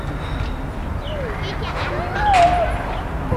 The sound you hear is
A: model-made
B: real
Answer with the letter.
B